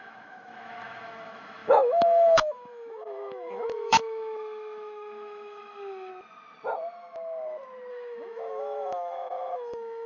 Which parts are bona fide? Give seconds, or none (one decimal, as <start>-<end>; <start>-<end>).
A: 6.1-7.9